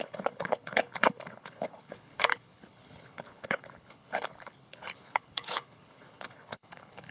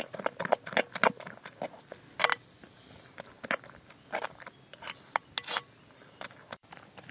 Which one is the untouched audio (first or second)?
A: second